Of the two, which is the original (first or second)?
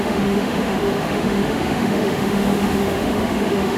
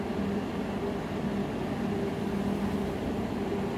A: second